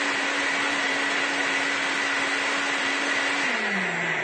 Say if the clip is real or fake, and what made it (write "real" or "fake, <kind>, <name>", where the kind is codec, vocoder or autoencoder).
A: real